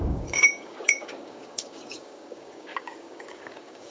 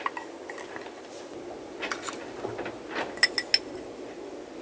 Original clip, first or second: second